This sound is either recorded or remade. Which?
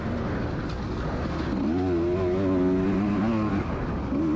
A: recorded